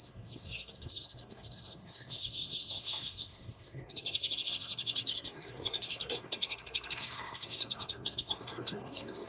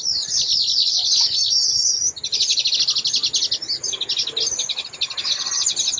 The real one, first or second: second